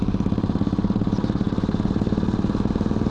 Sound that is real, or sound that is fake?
real